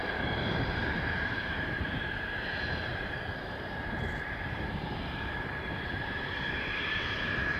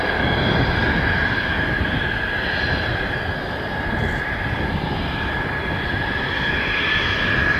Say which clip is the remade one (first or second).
first